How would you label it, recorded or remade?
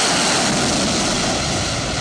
recorded